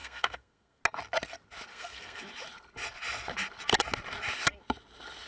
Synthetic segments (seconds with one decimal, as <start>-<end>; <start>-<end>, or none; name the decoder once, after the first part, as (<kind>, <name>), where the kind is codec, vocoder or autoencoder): 0.0-0.8 (codec, SNAC); 1.7-2.2